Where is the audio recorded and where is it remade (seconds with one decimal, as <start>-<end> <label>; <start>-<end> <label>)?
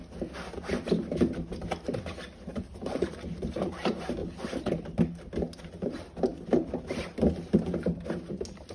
0.0-2.5 recorded; 2.5-3.8 remade; 3.8-4.2 recorded; 4.2-5.3 remade; 5.3-8.7 recorded